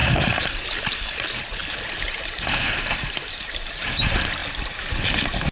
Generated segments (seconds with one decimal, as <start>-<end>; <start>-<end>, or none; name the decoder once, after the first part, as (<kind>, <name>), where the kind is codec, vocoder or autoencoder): 0.0-0.6 (vocoder, BigVGAN v2); 1.6-4.0